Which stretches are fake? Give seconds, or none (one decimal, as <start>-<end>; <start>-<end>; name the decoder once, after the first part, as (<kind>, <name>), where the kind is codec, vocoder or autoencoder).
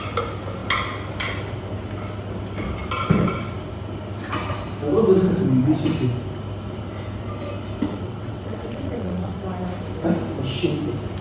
7.9-9.4 (vocoder, WaveNeXt)